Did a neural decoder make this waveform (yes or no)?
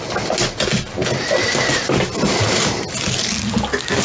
no